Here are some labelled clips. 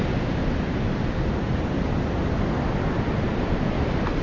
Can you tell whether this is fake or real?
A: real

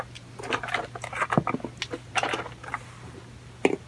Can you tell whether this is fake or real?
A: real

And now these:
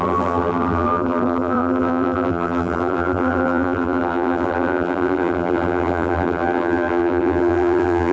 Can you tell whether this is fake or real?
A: fake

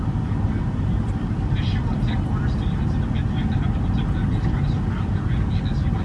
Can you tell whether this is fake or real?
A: real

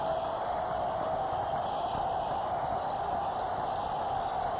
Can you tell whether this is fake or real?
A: real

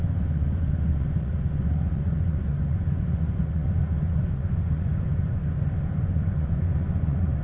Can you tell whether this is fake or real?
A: fake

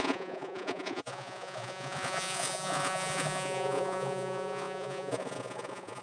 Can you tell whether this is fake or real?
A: fake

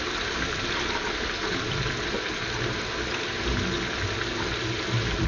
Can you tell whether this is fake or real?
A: real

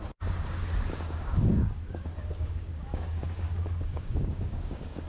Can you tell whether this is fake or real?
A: fake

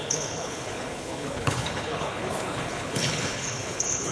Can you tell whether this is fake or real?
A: fake